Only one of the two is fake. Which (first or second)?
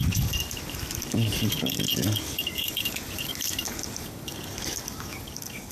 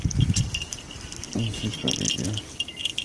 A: first